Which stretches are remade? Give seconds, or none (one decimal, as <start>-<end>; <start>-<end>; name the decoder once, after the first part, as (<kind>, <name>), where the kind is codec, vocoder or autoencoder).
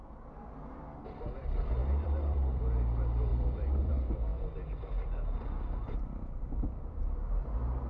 1.8-2.6 (vocoder, BigVGAN v2); 3.3-3.9; 4.3-7.0